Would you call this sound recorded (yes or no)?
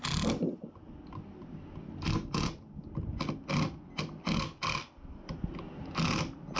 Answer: yes